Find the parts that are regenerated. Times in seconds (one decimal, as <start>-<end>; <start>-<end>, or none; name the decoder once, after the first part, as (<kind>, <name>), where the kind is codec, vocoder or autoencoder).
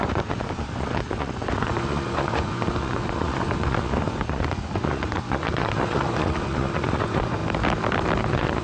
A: 0.0-7.4 (vocoder, Vocos); 8.2-8.6